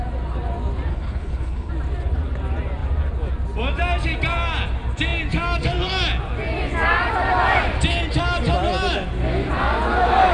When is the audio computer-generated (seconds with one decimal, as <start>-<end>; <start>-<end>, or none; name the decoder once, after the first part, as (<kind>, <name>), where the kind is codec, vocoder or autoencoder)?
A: 0.9-1.7 (codec, HILCodec)